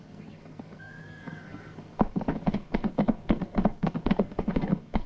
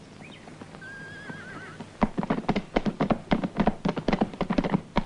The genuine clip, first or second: second